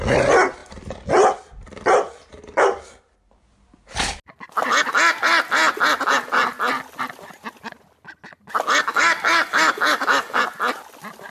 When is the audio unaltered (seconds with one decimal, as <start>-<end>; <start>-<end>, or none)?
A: 0.0-8.8; 10.4-11.3